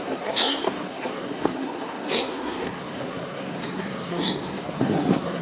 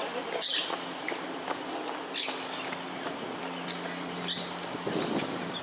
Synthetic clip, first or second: first